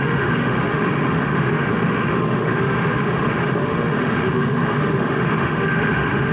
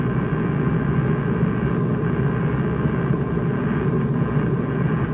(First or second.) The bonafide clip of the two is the second